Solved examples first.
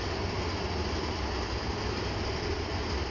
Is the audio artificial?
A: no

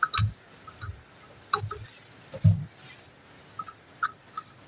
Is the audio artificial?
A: no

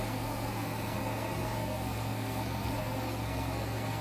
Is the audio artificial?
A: yes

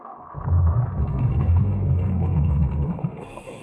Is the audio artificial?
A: yes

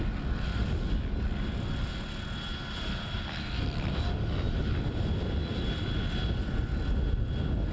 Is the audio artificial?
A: no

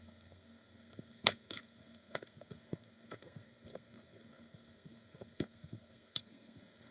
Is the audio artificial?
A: yes